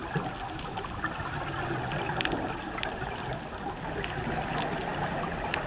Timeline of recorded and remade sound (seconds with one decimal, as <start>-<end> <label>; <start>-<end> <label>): 0.0-5.7 recorded